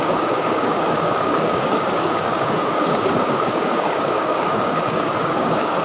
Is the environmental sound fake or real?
fake